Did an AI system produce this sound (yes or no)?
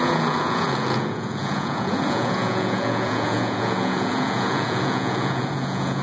yes